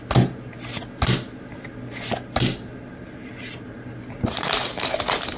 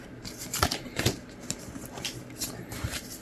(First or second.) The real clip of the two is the first